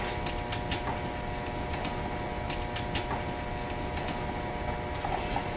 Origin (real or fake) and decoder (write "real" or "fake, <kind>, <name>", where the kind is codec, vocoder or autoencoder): real